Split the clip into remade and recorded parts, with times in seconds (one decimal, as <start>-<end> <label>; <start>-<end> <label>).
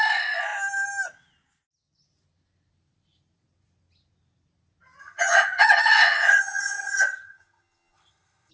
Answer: 0.0-5.0 recorded; 5.0-8.5 remade